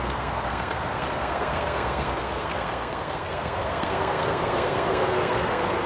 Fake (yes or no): yes